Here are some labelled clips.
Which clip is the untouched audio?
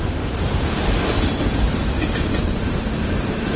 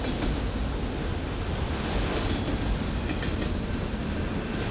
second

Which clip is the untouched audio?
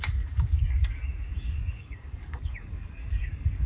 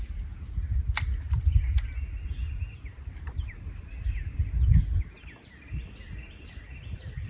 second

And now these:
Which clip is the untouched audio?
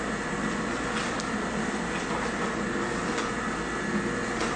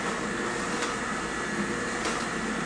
first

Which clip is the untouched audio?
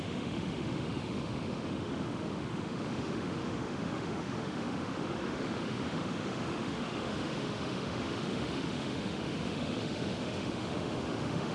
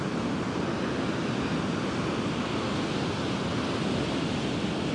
second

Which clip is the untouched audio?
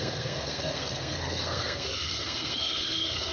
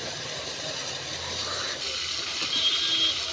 second